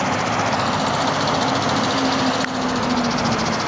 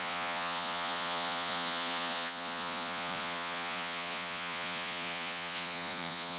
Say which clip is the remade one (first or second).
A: second